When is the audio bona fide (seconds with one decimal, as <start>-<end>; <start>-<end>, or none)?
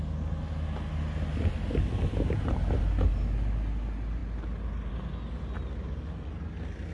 0.0-6.9